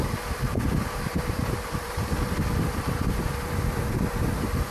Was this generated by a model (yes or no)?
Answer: yes